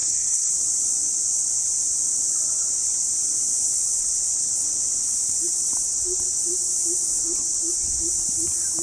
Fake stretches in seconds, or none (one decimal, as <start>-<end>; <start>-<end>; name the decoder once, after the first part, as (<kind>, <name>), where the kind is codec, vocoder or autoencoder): 0.0-0.5 (codec, HILCodec)

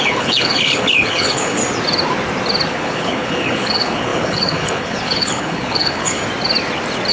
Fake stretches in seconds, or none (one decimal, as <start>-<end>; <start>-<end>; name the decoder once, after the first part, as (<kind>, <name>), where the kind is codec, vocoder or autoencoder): 0.0-1.6 (codec, HILCodec); 2.7-6.2

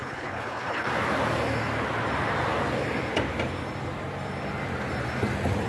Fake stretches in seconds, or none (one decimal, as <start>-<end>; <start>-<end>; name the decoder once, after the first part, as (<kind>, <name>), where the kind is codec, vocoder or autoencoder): 0.0-0.9 (codec, HILCodec)

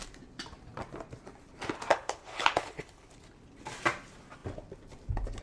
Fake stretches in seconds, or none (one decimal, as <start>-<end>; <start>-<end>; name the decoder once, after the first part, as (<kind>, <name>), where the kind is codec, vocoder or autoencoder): 1.9-3.1 (codec, HILCodec)

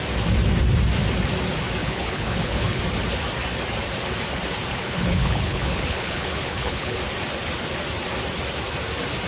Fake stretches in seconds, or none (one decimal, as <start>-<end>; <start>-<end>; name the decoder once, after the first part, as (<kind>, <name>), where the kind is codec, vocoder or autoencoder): 1.8-2.8 (codec, HILCodec); 4.7-7.0

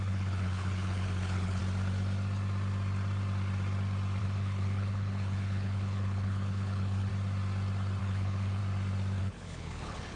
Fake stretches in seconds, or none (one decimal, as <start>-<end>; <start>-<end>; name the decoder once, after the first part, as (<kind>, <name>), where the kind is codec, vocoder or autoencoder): 0.0-1.6 (codec, HILCodec); 4.2-7.1; 8.0-8.6; 9.2-10.2

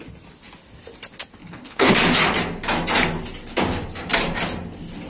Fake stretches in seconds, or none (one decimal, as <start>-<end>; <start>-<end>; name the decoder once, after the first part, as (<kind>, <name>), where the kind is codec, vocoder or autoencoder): 1.4-1.9 (codec, HILCodec)